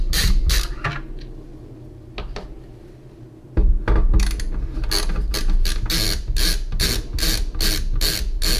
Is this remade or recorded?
recorded